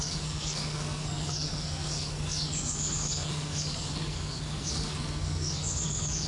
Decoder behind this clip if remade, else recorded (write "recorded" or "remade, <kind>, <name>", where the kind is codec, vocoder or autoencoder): remade, codec, SNAC